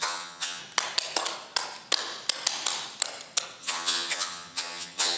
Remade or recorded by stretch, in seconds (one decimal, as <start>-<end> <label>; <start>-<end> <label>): 0.0-0.6 remade; 0.6-3.6 recorded; 3.6-5.2 remade